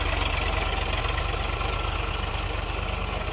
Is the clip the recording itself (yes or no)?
yes